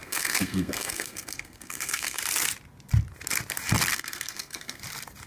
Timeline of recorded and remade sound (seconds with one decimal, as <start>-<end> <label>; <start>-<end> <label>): 0.0-2.2 remade; 2.2-3.9 recorded; 3.9-4.8 remade; 4.8-5.3 recorded